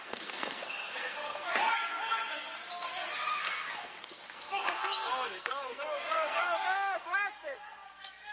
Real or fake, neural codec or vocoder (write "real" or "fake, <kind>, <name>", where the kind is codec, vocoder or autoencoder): fake, codec, SNAC